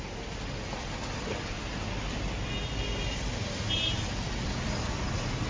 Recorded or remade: recorded